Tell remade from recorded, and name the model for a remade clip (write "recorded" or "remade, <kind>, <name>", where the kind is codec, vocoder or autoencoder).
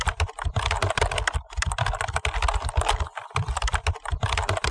recorded